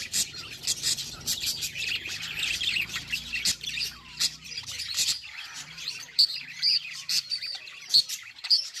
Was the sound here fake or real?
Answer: fake